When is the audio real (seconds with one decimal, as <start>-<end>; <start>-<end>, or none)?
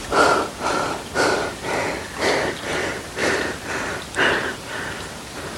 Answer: 0.0-3.2; 3.7-5.6